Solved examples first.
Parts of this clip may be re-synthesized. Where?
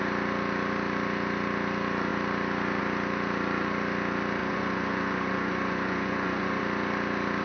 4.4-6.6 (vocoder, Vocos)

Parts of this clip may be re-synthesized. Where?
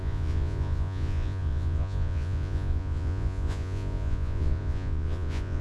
0.0-5.6 (vocoder, Vocos)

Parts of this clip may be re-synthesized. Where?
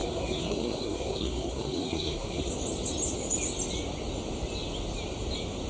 0.0-2.5 (codec, SNAC)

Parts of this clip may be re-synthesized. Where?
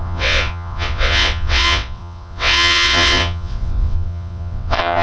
0.0-5.0 (vocoder, WaveNeXt)